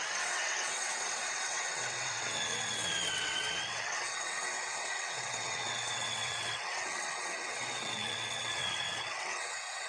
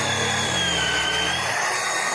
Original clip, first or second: second